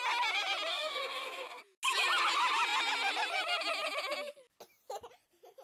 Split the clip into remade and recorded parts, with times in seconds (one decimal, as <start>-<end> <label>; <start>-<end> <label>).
0.0-0.7 recorded; 0.7-1.6 remade; 1.6-5.6 recorded